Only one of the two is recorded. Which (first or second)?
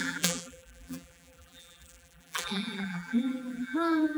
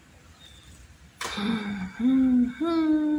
second